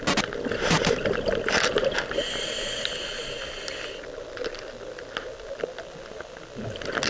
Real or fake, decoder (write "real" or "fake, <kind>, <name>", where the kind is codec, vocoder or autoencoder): real